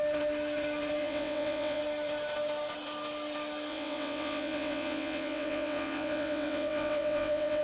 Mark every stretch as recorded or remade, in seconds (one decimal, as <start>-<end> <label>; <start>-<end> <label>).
0.0-1.0 recorded; 1.0-1.8 remade; 1.8-3.7 recorded; 3.7-7.6 remade